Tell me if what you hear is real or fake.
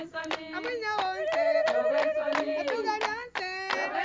real